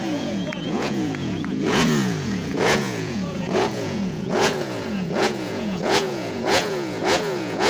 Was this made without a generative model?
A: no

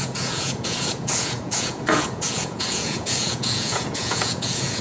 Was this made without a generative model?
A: no